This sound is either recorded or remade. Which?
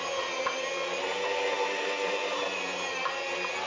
recorded